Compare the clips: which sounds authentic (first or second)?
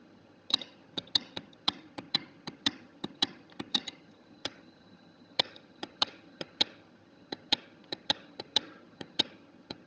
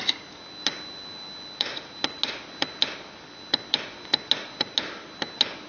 second